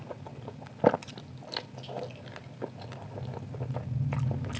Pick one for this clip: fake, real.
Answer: real